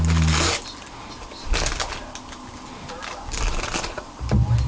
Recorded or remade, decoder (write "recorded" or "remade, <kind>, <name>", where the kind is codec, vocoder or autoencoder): recorded